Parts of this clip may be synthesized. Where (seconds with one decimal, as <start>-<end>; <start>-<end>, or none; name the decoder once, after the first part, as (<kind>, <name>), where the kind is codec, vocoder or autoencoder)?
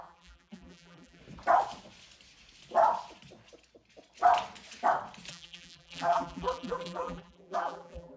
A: 0.0-1.2 (vocoder, BigVGAN v2); 5.3-8.2